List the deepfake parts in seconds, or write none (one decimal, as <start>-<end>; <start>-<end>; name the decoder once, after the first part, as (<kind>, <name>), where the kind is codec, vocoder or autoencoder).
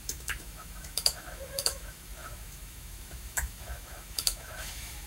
0.0-5.1 (autoencoder, DAC-VAE)